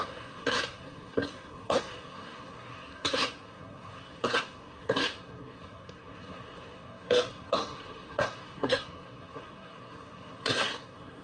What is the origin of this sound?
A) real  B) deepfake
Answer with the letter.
B